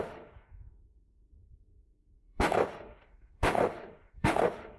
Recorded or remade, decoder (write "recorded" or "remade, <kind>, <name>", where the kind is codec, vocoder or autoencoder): remade, autoencoder, DAC-VAE